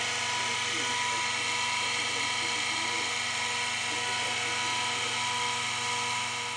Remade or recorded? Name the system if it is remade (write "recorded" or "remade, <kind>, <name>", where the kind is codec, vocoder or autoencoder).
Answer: recorded